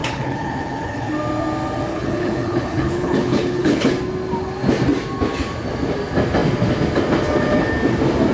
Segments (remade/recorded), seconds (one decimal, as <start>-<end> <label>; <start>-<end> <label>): 0.0-1.1 remade; 1.1-1.9 recorded; 1.9-3.9 remade; 3.9-8.3 recorded